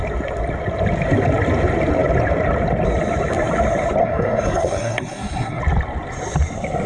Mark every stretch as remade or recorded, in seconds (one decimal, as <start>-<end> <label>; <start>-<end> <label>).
0.0-4.0 recorded; 4.0-5.6 remade; 5.6-6.9 recorded